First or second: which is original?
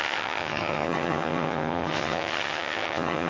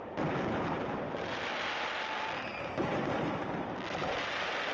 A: second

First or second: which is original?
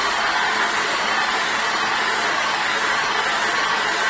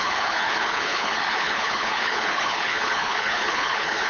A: first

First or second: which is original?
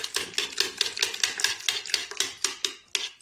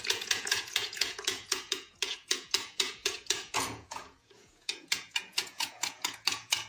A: first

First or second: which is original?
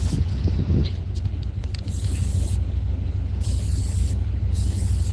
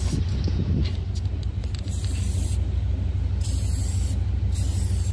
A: second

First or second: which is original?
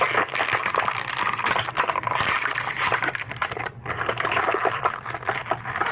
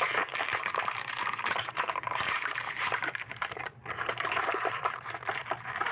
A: first